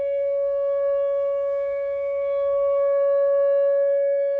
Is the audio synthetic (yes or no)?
yes